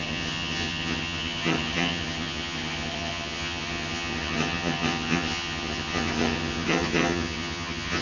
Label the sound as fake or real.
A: fake